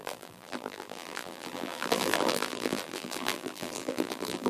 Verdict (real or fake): fake